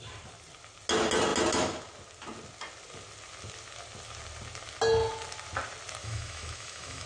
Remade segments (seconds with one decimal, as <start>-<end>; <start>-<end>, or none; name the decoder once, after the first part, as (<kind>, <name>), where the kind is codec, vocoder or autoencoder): 6.0-7.1 (autoencoder, DAC-VAE)